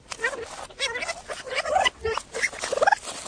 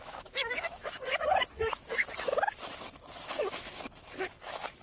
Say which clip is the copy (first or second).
second